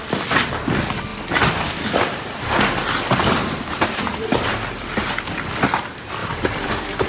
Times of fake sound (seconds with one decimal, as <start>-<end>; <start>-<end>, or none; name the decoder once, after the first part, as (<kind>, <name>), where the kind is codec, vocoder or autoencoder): 3.4-4.0 (vocoder, BigVGAN v2); 6.2-7.1